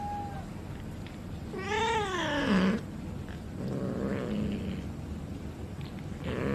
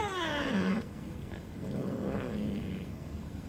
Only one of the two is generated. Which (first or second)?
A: second